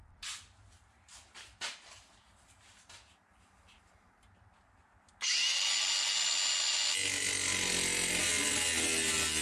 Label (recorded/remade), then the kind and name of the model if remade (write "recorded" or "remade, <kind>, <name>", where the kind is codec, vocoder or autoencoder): recorded